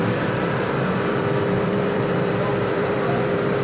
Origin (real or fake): fake